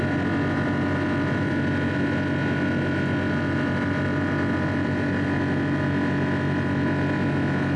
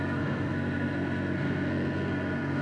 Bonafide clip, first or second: first